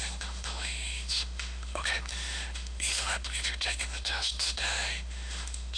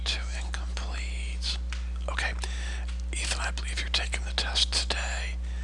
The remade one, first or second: first